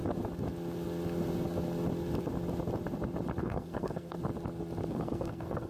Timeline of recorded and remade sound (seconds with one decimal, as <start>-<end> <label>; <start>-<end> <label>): 0.0-3.4 recorded; 3.4-4.2 remade; 4.2-4.9 recorded; 4.9-5.7 remade